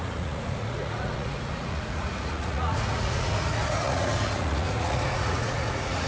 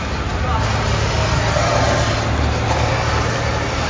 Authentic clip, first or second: second